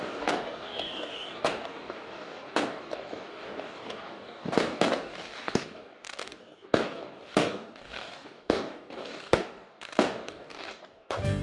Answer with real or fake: fake